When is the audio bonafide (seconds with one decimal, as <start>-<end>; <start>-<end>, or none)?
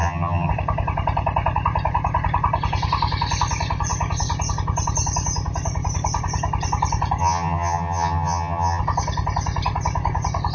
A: 0.5-7.2; 8.8-10.5